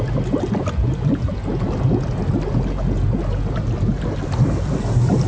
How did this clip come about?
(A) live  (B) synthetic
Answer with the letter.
A